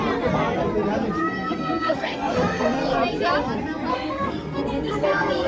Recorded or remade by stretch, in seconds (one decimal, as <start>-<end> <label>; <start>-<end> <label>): 0.0-1.2 recorded; 1.2-3.0 remade; 3.0-3.9 recorded; 3.9-5.5 remade